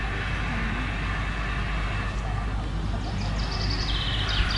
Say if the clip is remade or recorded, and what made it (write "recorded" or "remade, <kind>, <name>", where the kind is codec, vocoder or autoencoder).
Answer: recorded